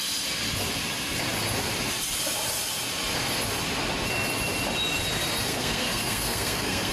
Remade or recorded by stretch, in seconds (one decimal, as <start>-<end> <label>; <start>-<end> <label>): 0.0-5.5 recorded; 5.5-6.9 remade

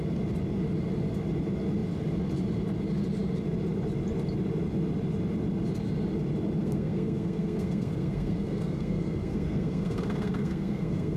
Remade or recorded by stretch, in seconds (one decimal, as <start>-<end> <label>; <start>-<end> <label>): 0.0-6.6 recorded; 6.6-11.2 remade

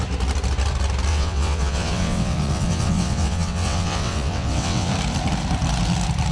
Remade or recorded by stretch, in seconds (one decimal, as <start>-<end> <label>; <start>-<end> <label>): 0.0-1.1 recorded; 1.1-4.9 remade; 4.9-6.3 recorded

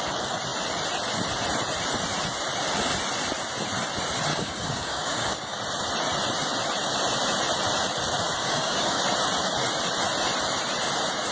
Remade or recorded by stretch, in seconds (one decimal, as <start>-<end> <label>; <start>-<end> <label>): 0.0-4.3 recorded; 4.3-5.6 remade; 5.6-8.4 recorded; 8.4-9.0 remade; 9.0-11.3 recorded

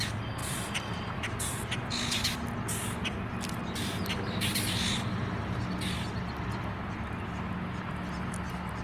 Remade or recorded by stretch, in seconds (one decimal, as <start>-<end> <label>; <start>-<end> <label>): 0.0-0.4 recorded; 0.4-1.5 remade; 1.5-8.8 recorded